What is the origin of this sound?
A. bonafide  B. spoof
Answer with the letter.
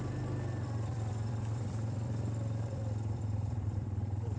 B